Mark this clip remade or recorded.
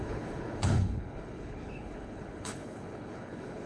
remade